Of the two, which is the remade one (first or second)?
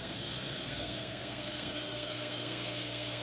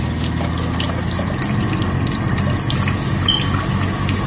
first